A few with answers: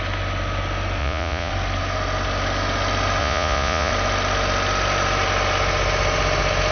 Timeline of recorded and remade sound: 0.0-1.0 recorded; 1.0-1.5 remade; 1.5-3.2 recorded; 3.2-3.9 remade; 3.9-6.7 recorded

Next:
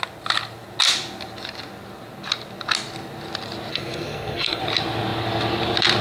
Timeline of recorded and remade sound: 0.0-3.7 recorded; 3.7-4.6 remade; 4.6-6.0 recorded

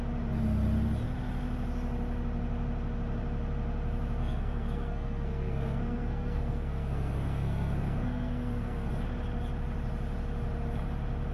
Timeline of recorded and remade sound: 0.0-4.2 recorded; 4.2-8.9 remade; 8.9-11.3 recorded